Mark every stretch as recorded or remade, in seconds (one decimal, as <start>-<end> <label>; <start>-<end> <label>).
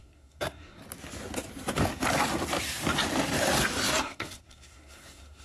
0.0-0.8 remade; 0.8-4.0 recorded; 4.0-5.4 remade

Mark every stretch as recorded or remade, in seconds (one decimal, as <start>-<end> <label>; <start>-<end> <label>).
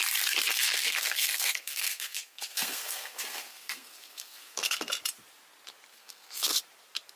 0.0-0.6 recorded; 0.6-4.9 remade; 4.9-5.9 recorded; 5.9-6.6 remade; 6.6-7.2 recorded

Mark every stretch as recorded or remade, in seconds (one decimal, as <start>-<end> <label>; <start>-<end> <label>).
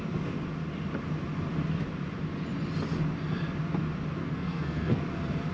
0.0-4.2 recorded; 4.2-5.0 remade; 5.0-5.5 recorded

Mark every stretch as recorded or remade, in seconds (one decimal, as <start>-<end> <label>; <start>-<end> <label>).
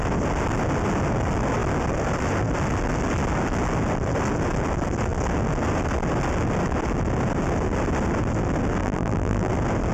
0.0-8.8 recorded; 8.8-9.5 remade; 9.5-9.9 recorded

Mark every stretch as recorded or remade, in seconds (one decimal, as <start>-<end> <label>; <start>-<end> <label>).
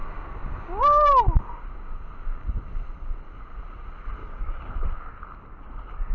0.0-4.2 recorded; 4.2-4.7 remade; 4.7-6.1 recorded